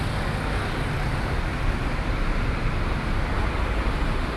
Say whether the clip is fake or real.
real